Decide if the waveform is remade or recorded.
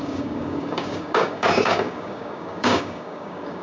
remade